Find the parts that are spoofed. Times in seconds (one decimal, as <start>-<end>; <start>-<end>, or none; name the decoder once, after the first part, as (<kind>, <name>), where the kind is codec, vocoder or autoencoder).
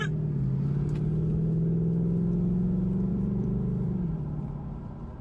3.1-4.2 (vocoder, BigVGAN v2)